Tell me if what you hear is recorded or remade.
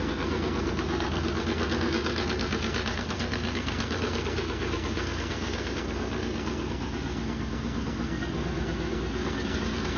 remade